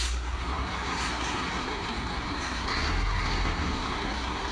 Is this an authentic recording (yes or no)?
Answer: no